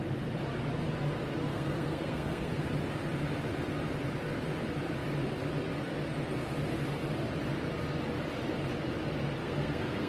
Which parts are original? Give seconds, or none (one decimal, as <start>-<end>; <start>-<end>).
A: 0.0-1.5; 2.6-9.4

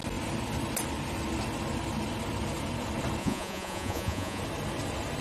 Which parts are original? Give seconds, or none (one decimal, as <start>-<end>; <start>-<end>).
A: 0.0-3.2; 4.4-5.2

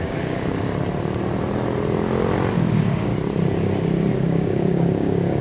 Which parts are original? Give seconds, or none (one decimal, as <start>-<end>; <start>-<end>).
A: 0.7-2.5; 3.1-4.1

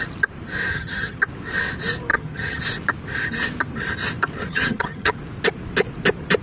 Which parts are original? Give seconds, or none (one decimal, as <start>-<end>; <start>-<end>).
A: 0.0-0.7; 1.2-2.1; 2.6-4.5; 5.1-6.4

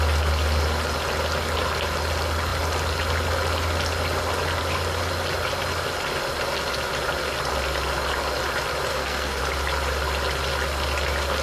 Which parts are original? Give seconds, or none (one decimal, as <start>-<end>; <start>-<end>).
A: 0.0-8.9; 9.4-11.4